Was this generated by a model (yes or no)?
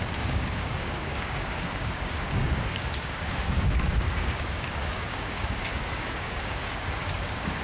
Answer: yes